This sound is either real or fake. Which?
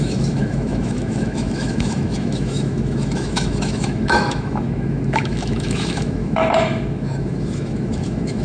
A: fake